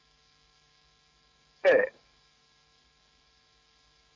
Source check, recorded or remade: remade